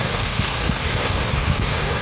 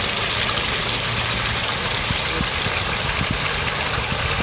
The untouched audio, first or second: second